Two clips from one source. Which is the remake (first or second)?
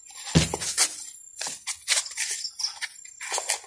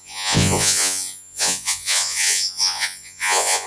second